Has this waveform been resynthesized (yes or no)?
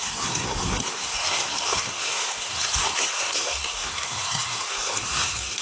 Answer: yes